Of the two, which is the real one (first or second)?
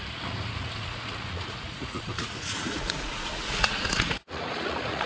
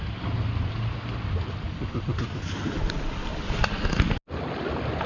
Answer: second